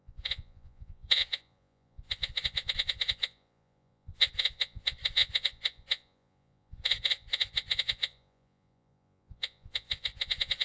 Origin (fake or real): fake